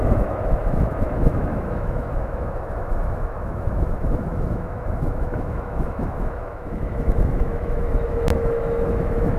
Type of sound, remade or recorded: remade